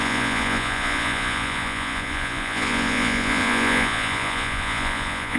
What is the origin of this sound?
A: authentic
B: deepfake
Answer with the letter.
B